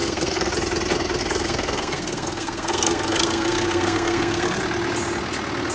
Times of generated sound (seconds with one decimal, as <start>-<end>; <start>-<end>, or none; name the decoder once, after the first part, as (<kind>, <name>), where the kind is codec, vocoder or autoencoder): 0.0-0.5 (codec, SNAC); 1.2-4.6